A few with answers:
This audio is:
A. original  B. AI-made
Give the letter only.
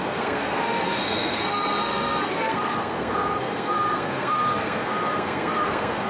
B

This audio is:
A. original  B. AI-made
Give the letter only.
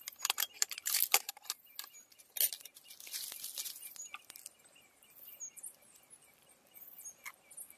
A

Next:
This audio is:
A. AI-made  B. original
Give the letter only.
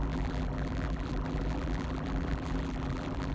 A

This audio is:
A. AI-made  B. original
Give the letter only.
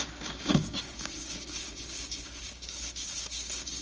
A